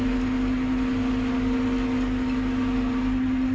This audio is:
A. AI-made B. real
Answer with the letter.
B